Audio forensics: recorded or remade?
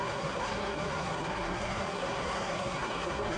remade